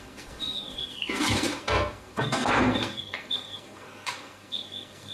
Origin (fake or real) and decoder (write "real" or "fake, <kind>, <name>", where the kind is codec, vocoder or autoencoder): fake, codec, SNAC